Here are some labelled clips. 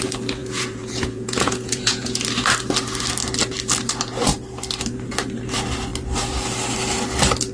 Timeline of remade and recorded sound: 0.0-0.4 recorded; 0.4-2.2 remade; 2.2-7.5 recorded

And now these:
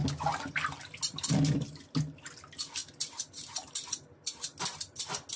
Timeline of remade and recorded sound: 0.0-5.4 recorded

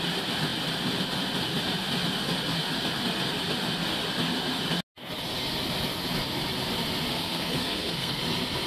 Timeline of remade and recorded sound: 0.0-7.1 recorded; 7.1-8.2 remade; 8.2-8.7 recorded